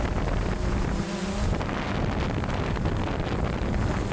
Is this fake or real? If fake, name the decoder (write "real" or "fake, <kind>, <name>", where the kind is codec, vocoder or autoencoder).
real